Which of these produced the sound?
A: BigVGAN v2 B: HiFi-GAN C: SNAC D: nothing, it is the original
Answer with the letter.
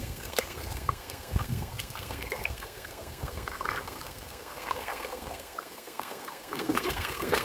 C